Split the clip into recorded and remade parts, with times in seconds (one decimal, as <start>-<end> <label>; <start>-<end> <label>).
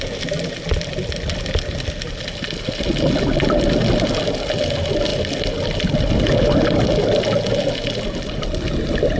0.0-9.2 recorded